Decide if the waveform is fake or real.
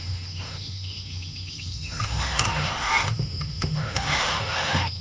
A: fake